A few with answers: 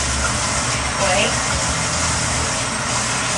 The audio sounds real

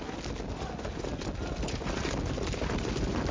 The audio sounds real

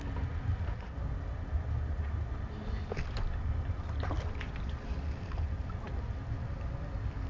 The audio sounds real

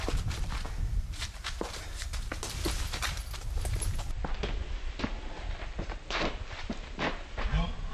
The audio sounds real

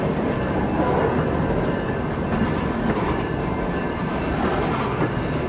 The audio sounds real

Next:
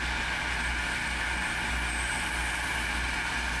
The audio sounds real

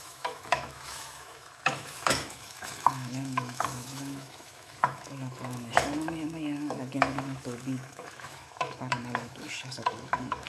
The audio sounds fake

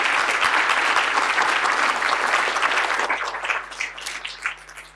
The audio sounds real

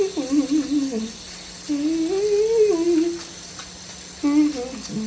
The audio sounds real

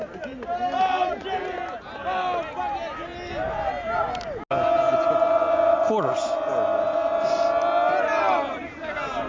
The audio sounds real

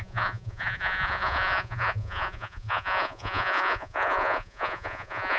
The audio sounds fake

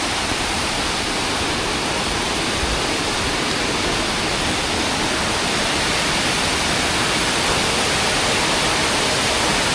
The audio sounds real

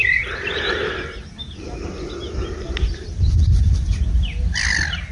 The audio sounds real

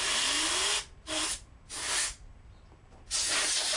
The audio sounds real